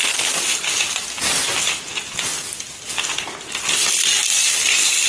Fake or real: real